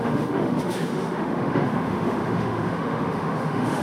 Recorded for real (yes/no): no